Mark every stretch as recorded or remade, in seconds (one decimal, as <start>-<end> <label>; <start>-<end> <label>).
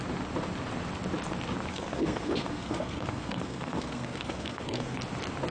0.0-1.7 recorded; 1.7-5.0 remade; 5.0-5.5 recorded